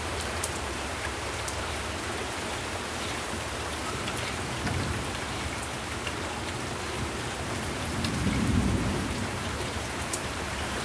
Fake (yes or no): yes